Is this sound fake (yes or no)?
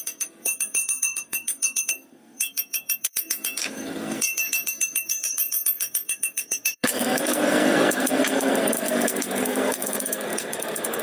yes